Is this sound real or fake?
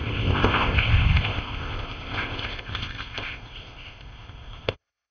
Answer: fake